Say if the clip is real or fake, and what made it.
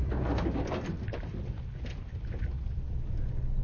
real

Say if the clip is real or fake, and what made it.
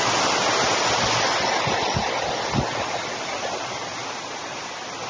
real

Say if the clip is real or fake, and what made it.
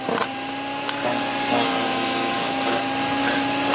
real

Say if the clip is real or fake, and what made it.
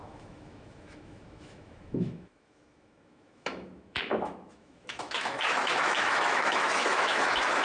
fake, autoencoder, DAC-VAE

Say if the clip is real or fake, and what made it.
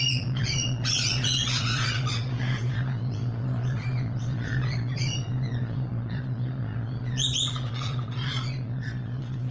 fake, vocoder, Vocos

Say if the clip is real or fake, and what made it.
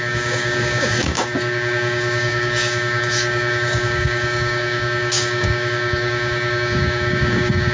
fake, codec, DAC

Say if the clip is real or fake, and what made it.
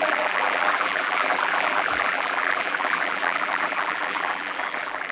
fake, vocoder, BigVGAN v2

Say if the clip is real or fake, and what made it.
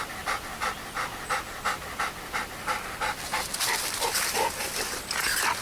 real